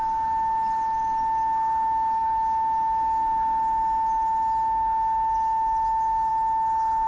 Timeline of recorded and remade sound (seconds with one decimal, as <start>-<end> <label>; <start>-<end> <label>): 0.0-7.1 recorded

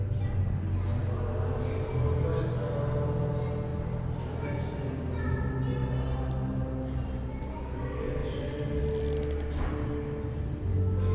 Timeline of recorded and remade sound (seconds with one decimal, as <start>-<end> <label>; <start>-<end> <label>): 0.0-11.1 recorded

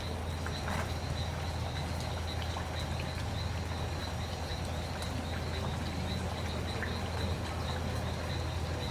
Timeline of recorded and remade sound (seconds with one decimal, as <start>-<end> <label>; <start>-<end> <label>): 0.0-8.9 recorded

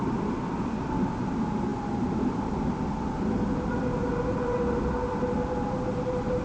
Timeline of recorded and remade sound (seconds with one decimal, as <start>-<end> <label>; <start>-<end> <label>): 0.0-6.4 recorded

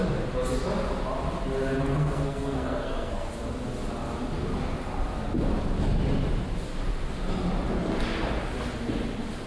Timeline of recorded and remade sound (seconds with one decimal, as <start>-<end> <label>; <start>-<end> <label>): 0.0-1.9 recorded; 1.9-3.3 remade; 3.3-9.5 recorded

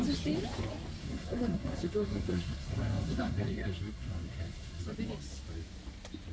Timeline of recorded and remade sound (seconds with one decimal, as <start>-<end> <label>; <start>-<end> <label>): 0.0-1.0 recorded; 1.0-4.8 remade; 4.8-6.3 recorded

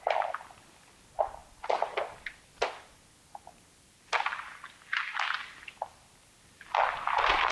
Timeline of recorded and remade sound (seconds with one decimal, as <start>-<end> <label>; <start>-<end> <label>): 0.0-7.5 recorded

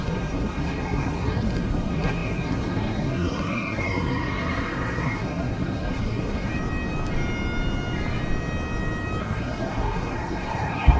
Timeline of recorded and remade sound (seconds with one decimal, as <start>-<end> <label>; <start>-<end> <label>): 0.0-6.5 remade; 6.5-9.2 recorded; 9.2-11.0 remade